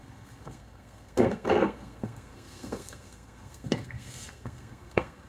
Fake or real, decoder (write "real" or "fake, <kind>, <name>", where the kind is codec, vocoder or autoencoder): fake, codec, SNAC